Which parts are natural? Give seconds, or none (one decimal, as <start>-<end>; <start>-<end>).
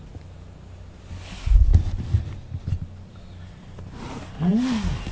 0.0-5.1